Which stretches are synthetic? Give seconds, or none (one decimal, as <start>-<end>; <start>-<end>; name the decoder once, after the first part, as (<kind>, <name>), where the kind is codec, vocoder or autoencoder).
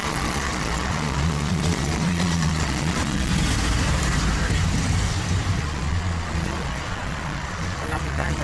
0.0-3.3 (vocoder, Vocos); 5.6-8.4